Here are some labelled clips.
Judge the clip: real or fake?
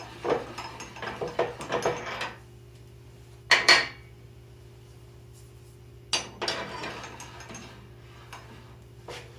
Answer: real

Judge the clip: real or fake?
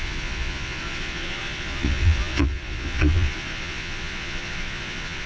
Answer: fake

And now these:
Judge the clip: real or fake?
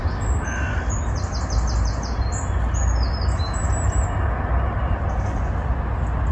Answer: real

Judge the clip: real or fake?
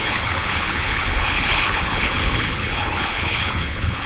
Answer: fake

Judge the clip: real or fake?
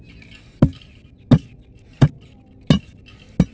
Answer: real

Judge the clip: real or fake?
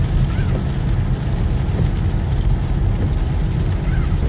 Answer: real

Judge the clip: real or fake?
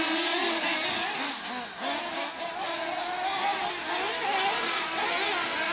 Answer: real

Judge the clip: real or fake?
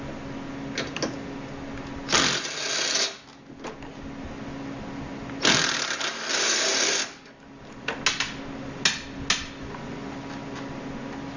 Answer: real